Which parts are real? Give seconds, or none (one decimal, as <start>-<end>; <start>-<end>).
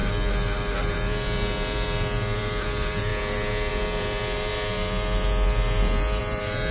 0.0-0.9